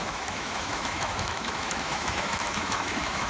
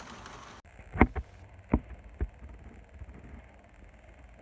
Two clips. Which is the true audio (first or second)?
second